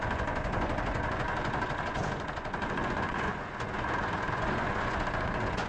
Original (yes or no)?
no